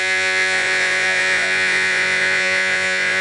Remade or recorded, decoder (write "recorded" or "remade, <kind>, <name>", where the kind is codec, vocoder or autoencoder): remade, vocoder, Vocos